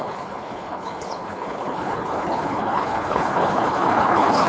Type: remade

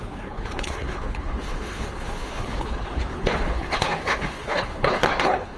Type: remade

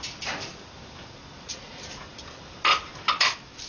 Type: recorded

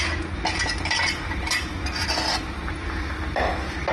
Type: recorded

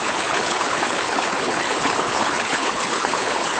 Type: remade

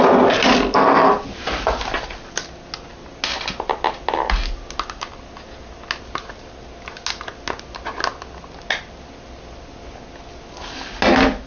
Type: recorded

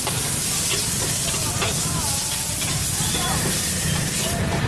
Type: recorded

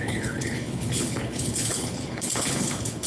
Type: remade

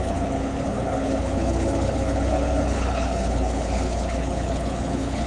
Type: remade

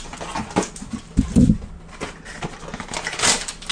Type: recorded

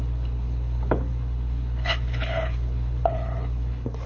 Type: remade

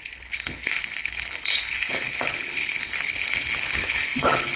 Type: remade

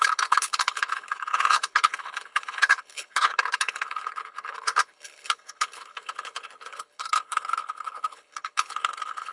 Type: remade